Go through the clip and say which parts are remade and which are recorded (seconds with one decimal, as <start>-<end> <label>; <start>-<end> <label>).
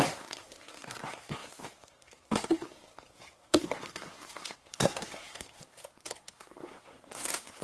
0.0-7.6 remade